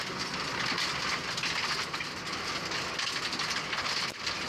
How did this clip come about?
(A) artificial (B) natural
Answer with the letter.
B